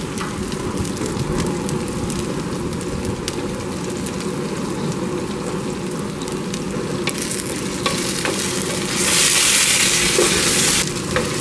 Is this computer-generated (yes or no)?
no